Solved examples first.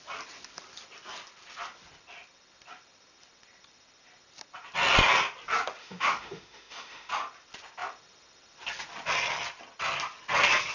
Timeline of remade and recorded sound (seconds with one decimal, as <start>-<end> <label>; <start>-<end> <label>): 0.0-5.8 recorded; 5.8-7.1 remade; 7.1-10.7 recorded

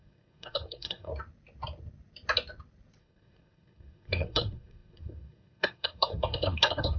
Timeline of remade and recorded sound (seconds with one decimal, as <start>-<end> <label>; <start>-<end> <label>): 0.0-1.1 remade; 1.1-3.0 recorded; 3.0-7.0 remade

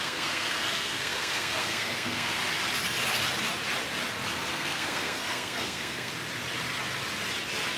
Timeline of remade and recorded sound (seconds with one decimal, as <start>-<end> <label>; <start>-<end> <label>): 0.0-2.4 remade; 2.4-4.5 recorded; 4.5-6.1 remade; 6.1-7.8 recorded

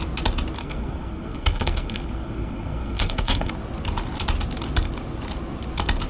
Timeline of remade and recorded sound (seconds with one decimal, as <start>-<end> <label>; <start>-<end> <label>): 0.0-0.6 recorded; 0.6-3.5 remade; 3.5-6.1 recorded

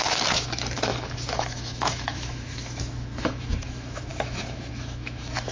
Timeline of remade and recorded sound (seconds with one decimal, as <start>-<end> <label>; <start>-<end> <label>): 0.0-5.5 remade

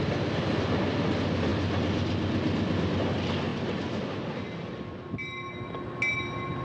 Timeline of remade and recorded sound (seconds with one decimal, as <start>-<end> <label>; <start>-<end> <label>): 0.0-6.6 recorded